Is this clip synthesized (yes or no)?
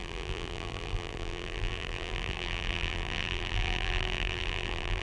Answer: yes